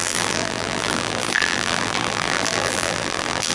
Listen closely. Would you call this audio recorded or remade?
remade